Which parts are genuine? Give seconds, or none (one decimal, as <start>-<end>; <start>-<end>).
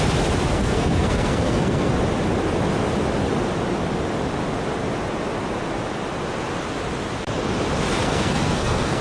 0.0-0.5; 1.9-8.0